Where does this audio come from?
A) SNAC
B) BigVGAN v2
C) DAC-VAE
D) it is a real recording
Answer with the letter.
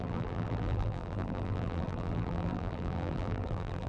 B